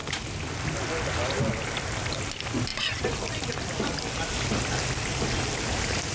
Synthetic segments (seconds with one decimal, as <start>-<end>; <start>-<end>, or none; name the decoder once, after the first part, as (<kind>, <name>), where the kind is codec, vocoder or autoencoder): none